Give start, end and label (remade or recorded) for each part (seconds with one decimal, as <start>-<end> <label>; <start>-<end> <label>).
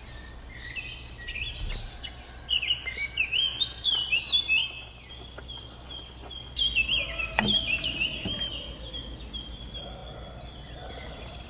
0.0-11.5 recorded